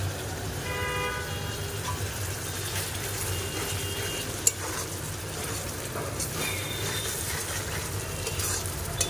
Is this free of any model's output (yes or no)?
yes